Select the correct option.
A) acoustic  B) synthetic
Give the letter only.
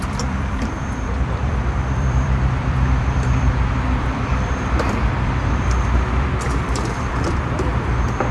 B